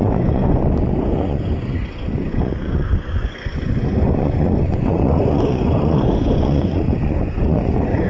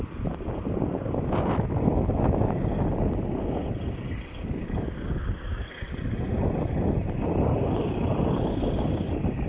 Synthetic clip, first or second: first